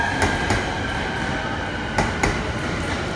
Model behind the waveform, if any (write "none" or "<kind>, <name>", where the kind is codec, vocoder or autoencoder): none